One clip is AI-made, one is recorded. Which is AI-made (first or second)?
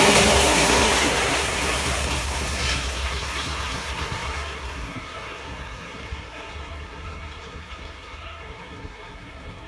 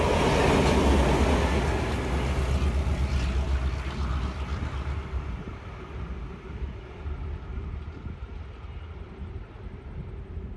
first